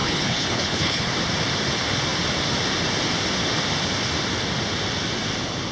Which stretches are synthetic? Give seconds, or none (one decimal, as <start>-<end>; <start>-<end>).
0.0-1.1